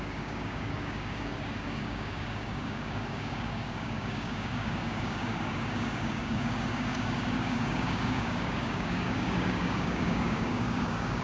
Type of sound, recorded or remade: remade